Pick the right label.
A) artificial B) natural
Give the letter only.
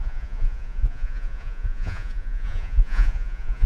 A